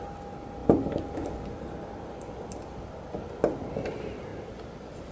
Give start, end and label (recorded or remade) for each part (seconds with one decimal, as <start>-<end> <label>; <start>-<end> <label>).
0.0-5.1 recorded